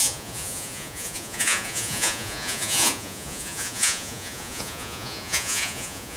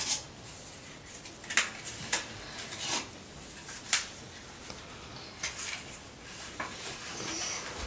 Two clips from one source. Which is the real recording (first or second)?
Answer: second